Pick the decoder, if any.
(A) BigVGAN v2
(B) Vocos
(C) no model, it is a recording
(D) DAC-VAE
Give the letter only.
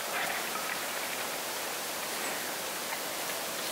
C